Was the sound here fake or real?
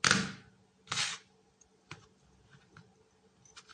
real